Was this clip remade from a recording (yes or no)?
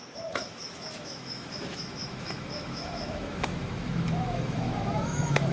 yes